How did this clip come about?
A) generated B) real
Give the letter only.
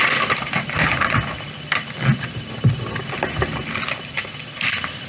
B